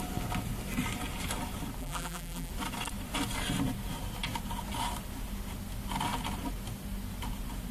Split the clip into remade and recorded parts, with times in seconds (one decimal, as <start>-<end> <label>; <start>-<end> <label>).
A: 0.0-1.8 recorded; 1.8-2.5 remade; 2.5-7.7 recorded